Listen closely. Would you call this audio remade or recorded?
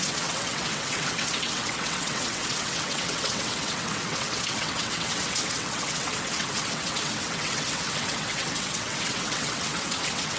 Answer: remade